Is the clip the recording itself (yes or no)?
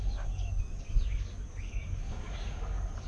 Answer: no